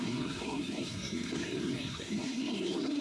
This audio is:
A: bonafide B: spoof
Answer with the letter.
B